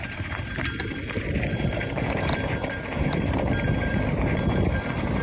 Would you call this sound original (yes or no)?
no